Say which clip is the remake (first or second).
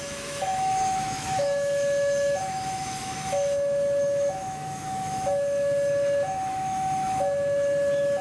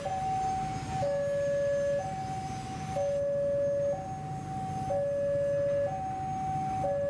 first